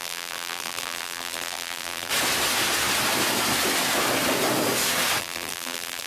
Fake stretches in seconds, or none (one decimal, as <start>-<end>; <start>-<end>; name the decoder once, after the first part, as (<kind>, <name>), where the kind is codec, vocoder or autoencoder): 0.0-2.1 (vocoder, BigVGAN v2); 5.2-6.1